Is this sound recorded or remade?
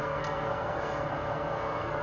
remade